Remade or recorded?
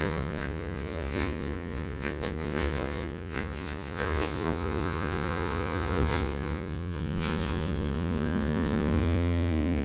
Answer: remade